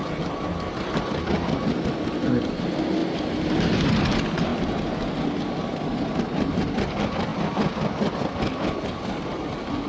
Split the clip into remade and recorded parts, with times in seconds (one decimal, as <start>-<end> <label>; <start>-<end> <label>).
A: 0.0-9.9 recorded